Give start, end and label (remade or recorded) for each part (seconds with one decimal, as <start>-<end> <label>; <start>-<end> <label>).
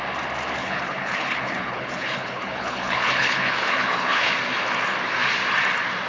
0.0-0.6 recorded; 0.6-4.3 remade; 4.3-6.1 recorded